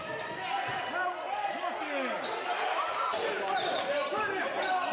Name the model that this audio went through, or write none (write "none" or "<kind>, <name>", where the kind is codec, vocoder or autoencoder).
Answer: none